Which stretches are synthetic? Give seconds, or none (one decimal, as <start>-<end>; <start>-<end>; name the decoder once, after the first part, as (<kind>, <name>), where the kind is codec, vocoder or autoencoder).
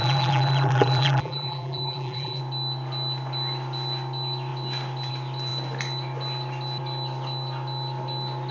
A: 0.0-2.4 (vocoder, BigVGAN v2)